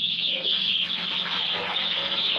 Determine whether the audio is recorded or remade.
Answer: remade